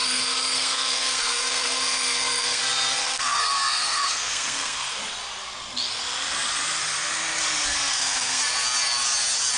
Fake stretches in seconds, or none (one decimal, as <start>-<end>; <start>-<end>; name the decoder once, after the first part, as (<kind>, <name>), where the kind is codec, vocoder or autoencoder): 0.0-2.6 (codec, SNAC); 3.0-5.0; 7.7-8.4